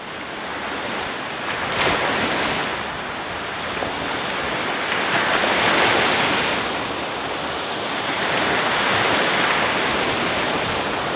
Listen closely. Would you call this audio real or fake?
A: real